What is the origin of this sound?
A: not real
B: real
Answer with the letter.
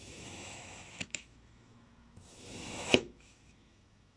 A